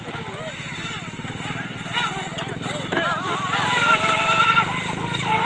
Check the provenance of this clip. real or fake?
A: real